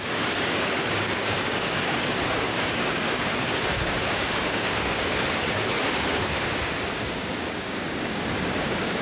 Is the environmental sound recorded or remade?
remade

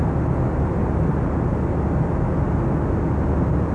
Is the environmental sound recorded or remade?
recorded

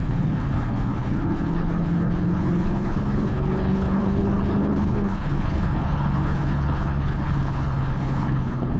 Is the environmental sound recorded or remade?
remade